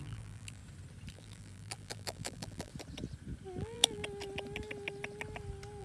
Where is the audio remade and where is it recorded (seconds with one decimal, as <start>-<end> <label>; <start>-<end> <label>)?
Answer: 0.0-0.6 remade; 0.6-1.1 recorded; 1.1-2.7 remade; 2.7-3.6 recorded; 3.6-4.0 remade; 4.0-5.8 recorded